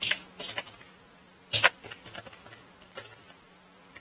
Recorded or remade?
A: recorded